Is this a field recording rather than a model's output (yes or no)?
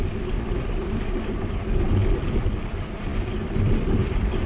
yes